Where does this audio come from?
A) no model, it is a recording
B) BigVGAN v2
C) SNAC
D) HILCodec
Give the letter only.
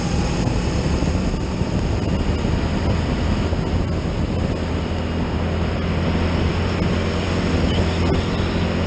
A